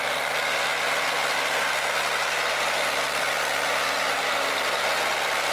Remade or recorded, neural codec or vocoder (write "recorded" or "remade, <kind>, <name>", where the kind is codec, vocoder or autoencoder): recorded